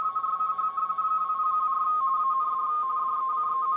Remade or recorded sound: recorded